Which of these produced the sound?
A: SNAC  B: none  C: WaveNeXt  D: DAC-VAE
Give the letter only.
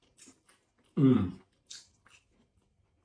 B